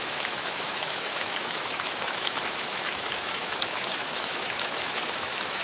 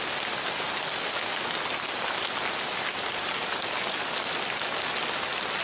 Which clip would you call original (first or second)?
second